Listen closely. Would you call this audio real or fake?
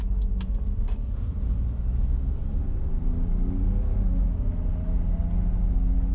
real